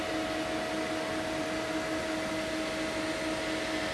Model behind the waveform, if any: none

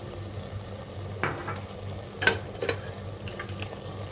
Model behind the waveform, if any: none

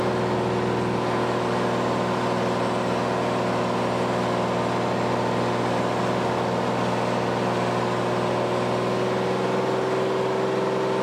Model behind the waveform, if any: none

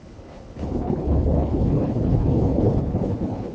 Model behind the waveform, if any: codec, HILCodec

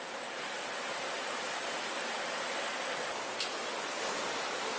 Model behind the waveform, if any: none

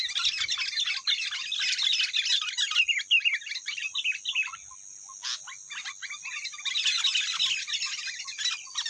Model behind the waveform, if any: none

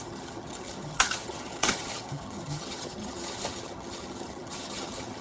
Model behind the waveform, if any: vocoder, HiFi-GAN